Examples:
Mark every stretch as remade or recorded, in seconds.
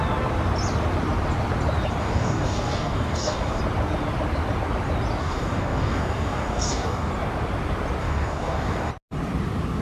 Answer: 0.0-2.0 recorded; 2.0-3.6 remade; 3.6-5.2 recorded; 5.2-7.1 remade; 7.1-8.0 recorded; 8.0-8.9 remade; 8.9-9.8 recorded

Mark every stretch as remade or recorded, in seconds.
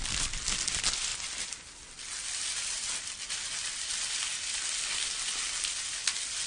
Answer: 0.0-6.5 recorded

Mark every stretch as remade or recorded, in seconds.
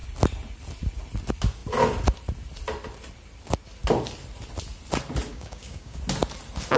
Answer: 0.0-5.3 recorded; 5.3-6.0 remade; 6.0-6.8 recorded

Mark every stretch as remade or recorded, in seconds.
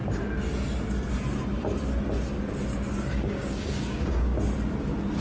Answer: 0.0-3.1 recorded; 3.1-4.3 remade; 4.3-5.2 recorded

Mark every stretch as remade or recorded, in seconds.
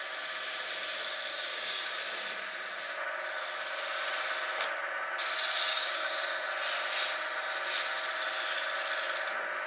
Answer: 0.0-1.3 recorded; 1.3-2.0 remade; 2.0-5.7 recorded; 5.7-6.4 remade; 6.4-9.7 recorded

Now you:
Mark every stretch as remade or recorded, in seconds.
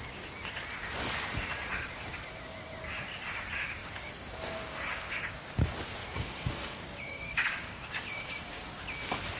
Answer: 0.0-3.8 recorded; 3.8-5.3 remade; 5.3-6.0 recorded; 6.0-8.8 remade; 8.8-9.4 recorded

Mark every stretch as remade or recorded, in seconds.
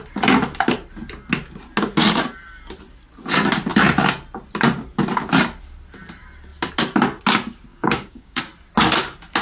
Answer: 0.0-7.7 recorded; 7.7-8.4 remade; 8.4-9.4 recorded